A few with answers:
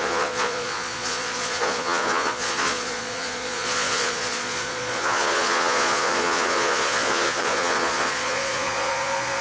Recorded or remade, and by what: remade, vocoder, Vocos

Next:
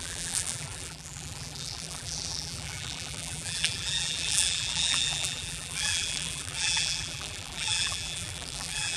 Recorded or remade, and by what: remade, vocoder, BigVGAN v2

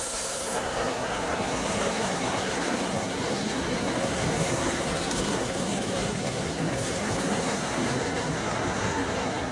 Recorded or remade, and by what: remade, codec, SNAC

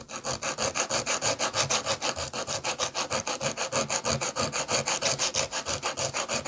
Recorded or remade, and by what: recorded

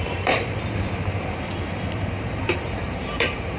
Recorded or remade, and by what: remade, vocoder, BigVGAN v2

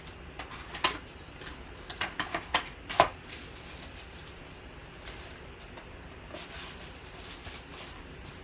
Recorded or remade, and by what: recorded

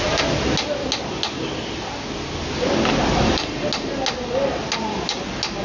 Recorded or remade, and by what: recorded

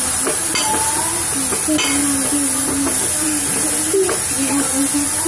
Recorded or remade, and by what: recorded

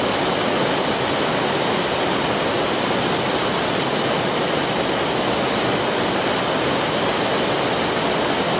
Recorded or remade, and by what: recorded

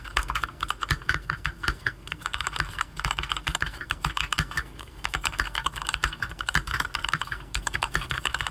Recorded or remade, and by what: remade, codec, SNAC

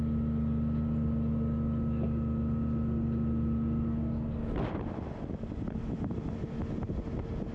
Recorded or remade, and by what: recorded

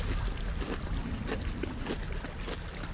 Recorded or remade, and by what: recorded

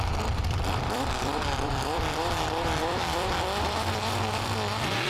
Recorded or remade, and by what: remade, vocoder, BigVGAN v2